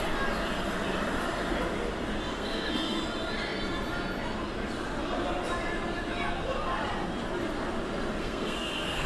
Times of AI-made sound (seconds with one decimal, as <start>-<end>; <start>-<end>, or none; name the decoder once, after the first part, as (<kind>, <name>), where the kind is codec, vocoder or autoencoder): 2.3-3.0 (codec, SNAC); 8.2-9.1